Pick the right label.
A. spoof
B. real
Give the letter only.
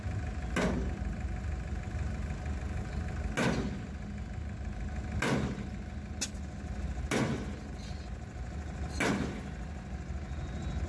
B